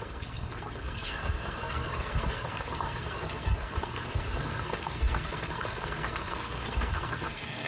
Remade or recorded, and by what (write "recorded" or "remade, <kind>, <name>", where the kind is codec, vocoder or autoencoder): remade, codec, SNAC